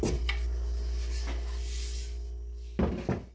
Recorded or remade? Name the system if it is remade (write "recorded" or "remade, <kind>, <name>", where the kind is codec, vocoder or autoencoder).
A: recorded